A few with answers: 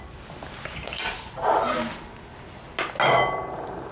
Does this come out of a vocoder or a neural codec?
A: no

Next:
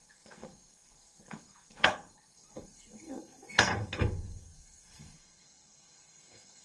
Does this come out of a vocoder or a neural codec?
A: yes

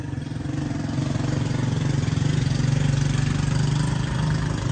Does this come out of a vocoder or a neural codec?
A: no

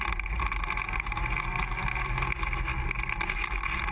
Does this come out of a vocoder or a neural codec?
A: no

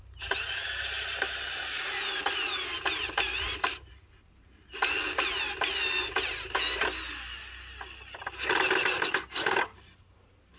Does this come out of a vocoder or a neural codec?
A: no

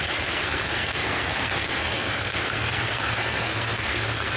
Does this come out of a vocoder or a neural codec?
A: yes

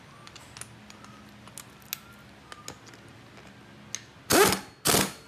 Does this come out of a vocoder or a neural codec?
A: no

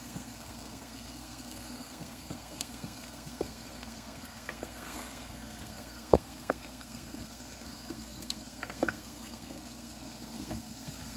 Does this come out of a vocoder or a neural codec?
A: yes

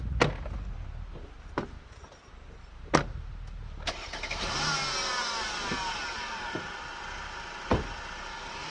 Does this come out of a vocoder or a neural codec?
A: no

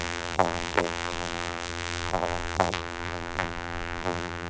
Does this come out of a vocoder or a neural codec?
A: yes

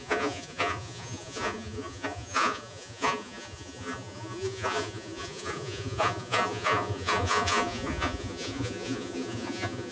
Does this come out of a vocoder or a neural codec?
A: yes